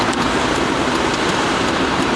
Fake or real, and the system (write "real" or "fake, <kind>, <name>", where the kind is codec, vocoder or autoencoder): fake, vocoder, BigVGAN v2